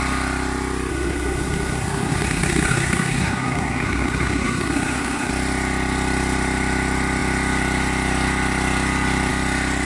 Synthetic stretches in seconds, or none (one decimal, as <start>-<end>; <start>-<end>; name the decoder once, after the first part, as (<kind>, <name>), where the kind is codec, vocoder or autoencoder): 0.9-5.3 (codec, SNAC)